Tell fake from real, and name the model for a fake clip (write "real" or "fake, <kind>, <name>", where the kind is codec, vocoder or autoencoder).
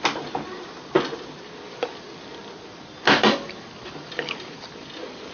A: real